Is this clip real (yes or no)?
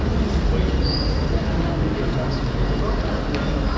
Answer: yes